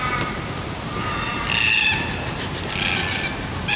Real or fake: real